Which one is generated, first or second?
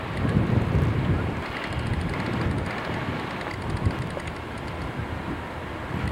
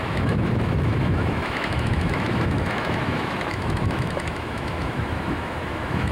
second